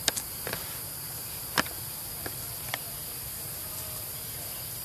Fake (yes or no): yes